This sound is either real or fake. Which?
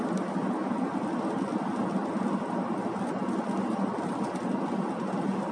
real